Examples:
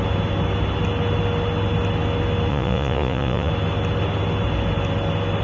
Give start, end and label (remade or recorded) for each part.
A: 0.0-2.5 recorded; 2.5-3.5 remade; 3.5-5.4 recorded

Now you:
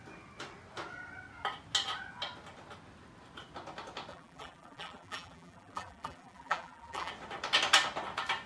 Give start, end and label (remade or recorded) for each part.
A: 0.0-4.1 recorded; 4.1-7.1 remade; 7.1-8.5 recorded

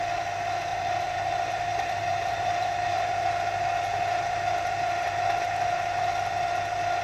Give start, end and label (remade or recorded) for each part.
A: 0.0-0.7 recorded; 0.7-3.1 remade; 3.1-7.0 recorded

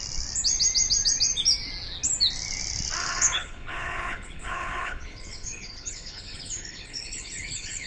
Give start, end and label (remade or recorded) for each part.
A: 0.0-3.0 recorded; 3.0-7.9 remade

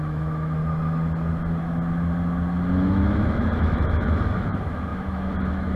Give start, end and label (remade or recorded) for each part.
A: 0.0-0.6 remade; 0.6-2.9 recorded; 2.9-5.8 remade